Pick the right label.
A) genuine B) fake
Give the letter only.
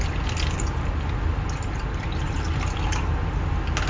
A